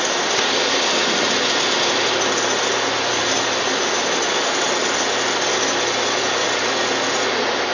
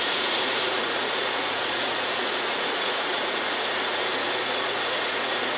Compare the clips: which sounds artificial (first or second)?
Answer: second